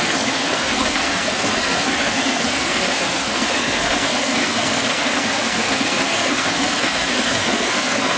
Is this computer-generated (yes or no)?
yes